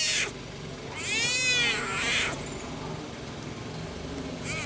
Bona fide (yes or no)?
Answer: yes